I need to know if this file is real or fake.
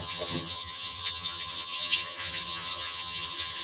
fake